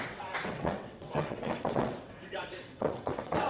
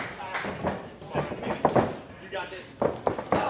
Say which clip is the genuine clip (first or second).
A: second